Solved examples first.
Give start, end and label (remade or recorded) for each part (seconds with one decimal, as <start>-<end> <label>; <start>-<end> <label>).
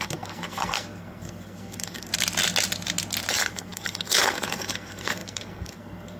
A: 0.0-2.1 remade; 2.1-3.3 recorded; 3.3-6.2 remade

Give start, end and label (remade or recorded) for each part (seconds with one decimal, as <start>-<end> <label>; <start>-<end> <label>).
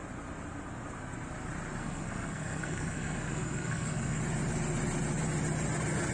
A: 0.0-1.8 recorded; 1.8-4.2 remade; 4.2-6.1 recorded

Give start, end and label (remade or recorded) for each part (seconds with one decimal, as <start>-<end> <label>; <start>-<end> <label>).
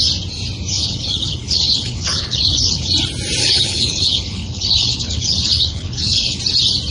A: 0.0-0.7 recorded; 0.7-2.9 remade; 2.9-3.4 recorded; 3.4-6.4 remade; 6.4-6.9 recorded